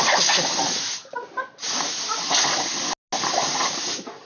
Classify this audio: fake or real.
real